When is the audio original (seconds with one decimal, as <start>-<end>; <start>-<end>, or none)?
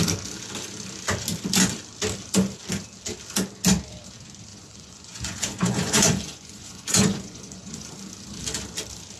0.0-4.5; 7.9-9.2